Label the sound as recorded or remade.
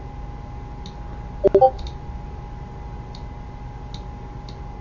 recorded